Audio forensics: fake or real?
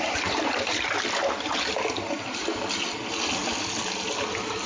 real